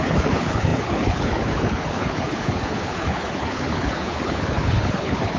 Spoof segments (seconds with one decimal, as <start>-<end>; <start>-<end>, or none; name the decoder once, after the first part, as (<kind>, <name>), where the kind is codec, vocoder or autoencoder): 0.0-5.4 (codec, HILCodec)